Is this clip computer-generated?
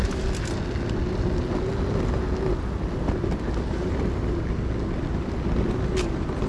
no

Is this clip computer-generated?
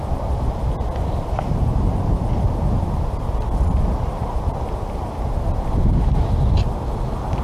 no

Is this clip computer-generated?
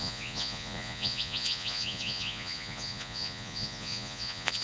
yes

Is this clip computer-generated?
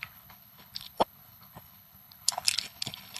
yes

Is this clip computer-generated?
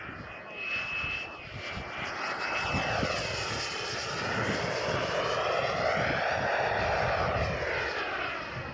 no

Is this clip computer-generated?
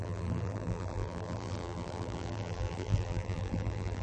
yes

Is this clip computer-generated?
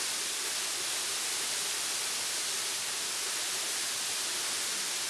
no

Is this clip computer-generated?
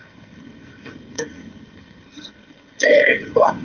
yes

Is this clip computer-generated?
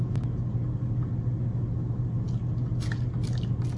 no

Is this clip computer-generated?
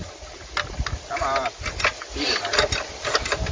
no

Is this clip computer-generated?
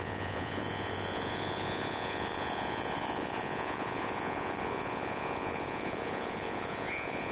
yes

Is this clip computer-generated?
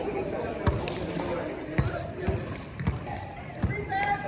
yes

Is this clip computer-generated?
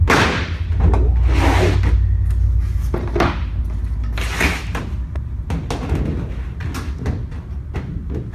no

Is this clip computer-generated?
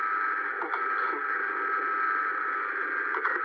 no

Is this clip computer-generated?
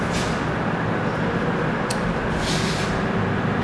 no